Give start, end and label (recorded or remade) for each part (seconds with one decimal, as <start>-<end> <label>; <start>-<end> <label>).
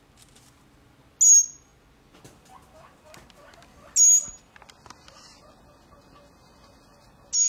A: 0.0-7.5 recorded